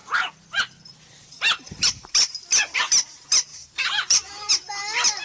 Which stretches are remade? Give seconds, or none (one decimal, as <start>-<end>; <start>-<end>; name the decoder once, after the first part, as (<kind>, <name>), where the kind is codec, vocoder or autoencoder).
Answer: 0.0-2.1 (vocoder, BigVGAN v2); 3.5-4.5